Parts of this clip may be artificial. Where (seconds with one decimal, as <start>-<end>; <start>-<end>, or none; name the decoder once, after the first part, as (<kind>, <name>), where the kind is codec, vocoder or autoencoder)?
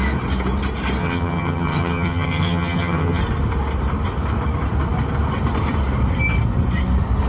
1.0-3.2 (vocoder, HiFi-GAN)